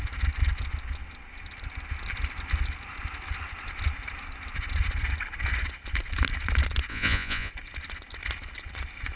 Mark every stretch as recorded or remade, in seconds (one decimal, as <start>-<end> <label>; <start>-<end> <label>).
0.0-6.9 recorded; 6.9-7.5 remade; 7.5-9.2 recorded